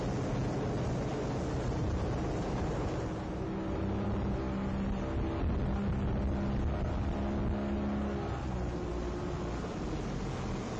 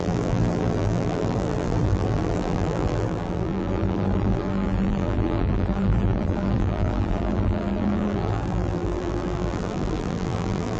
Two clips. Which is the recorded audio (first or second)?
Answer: first